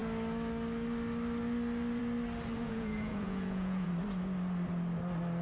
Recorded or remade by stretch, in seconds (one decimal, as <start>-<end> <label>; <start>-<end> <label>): 0.0-2.6 recorded; 2.6-3.9 remade; 3.9-5.4 recorded